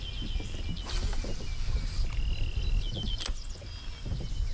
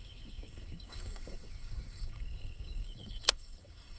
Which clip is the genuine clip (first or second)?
first